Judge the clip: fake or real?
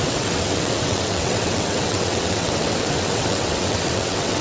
fake